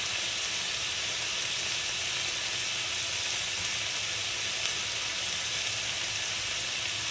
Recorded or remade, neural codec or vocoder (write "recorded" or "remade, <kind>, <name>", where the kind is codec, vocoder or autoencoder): recorded